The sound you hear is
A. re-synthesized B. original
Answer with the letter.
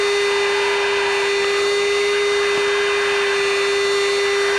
B